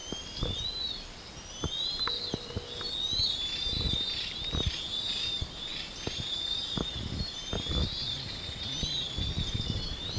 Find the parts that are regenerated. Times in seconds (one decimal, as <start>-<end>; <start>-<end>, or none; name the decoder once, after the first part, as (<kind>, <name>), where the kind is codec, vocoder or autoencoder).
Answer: none